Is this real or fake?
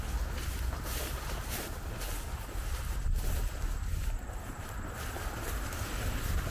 real